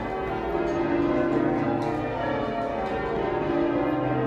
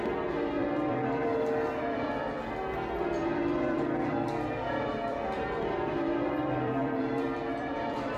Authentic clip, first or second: first